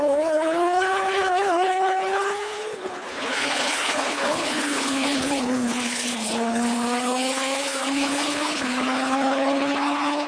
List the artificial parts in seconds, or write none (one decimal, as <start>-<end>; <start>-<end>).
0.0-10.3